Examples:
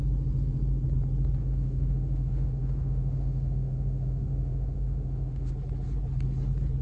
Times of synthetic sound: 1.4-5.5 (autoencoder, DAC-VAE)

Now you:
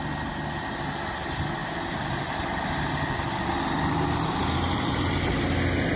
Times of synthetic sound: 1.6-5.1 (vocoder, BigVGAN v2)

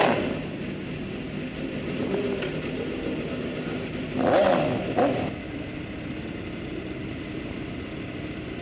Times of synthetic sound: none